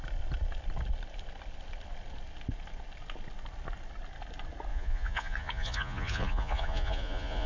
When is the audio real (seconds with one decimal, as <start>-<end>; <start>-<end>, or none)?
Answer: 0.0-4.7